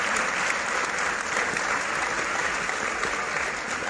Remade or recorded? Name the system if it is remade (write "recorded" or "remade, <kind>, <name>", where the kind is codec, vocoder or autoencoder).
recorded